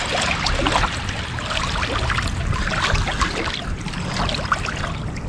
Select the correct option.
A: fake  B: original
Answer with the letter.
B